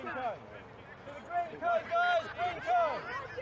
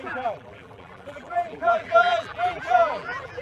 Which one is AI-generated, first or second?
second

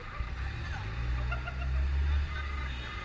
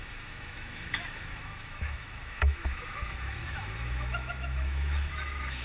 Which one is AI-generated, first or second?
second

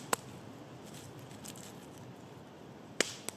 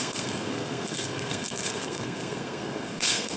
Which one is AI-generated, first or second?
second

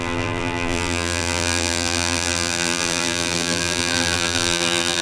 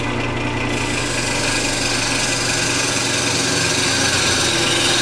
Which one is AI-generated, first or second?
first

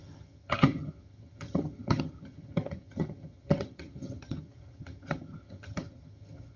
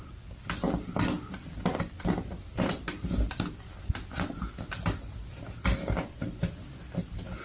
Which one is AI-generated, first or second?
first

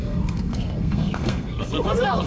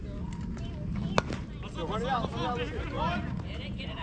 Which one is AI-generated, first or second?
first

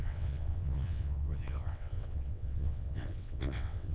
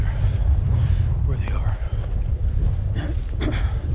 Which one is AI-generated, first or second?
first